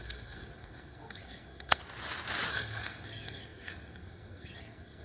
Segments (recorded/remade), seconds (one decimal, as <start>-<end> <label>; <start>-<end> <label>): 0.0-1.8 remade; 1.8-2.5 recorded; 2.5-5.0 remade